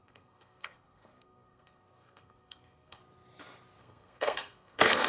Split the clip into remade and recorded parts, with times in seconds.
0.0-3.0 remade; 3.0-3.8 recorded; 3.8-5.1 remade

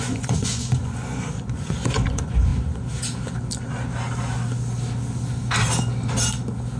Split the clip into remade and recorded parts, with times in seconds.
0.0-2.5 remade; 2.5-6.8 recorded

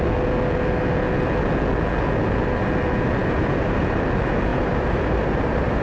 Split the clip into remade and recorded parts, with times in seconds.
0.0-3.2 recorded; 3.2-3.8 remade; 3.8-4.5 recorded; 4.5-5.8 remade

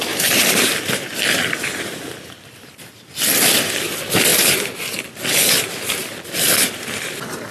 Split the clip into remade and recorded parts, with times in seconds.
0.0-7.5 recorded

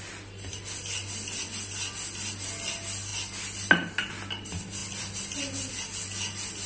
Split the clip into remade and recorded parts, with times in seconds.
0.0-6.7 recorded

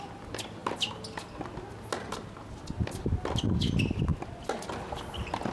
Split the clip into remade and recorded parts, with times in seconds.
0.0-5.5 recorded